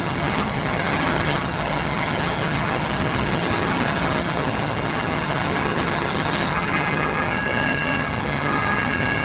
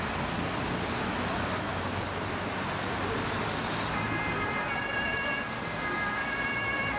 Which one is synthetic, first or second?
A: first